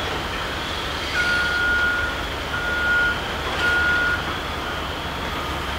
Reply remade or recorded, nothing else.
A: recorded